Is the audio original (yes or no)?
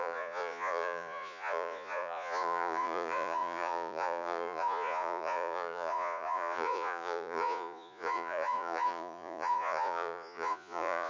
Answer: no